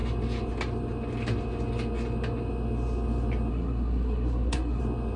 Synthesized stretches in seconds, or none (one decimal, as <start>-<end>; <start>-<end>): 3.5-4.8